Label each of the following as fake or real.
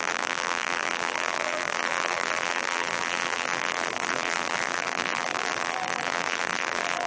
fake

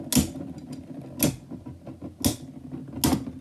real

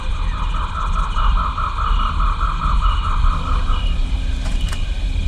real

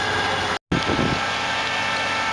real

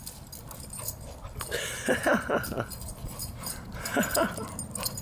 real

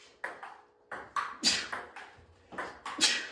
real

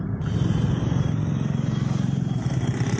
fake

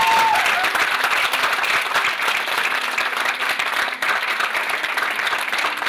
real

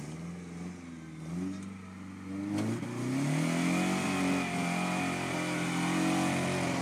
real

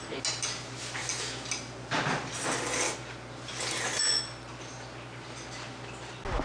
real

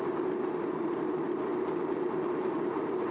fake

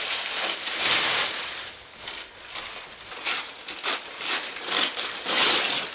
real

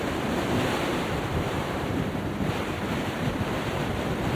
fake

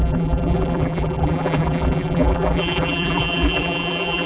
fake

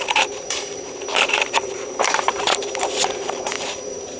fake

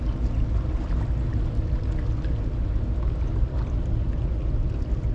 real